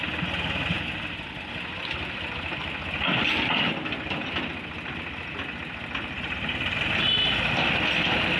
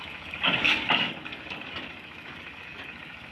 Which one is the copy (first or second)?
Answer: second